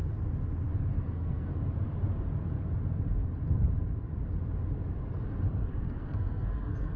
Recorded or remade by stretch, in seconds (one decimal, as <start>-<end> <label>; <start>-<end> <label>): 0.0-0.9 recorded; 0.9-1.5 remade; 1.5-5.7 recorded; 5.7-7.0 remade